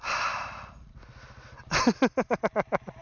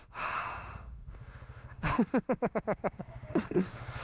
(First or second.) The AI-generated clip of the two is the second